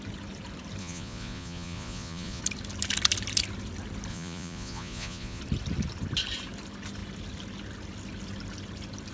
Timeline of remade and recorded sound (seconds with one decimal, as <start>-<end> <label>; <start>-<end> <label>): 0.0-0.8 recorded; 0.8-2.4 remade; 2.4-4.1 recorded; 4.1-5.4 remade; 5.4-9.1 recorded